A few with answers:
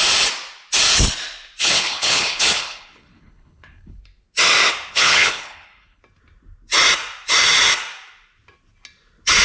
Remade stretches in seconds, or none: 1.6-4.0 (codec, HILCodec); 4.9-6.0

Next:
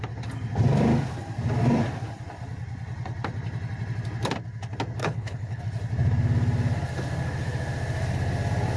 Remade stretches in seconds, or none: 5.0-5.6 (codec, HILCodec)

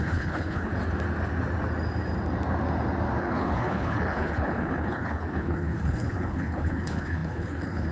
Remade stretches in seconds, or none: 0.0-0.7 (codec, HILCodec); 3.2-7.9